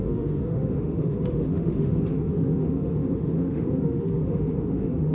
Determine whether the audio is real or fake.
fake